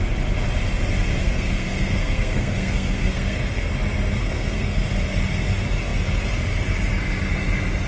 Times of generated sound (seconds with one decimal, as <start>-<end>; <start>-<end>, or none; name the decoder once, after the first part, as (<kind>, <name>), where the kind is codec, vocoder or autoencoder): 1.2-3.7 (codec, SNAC); 4.2-4.9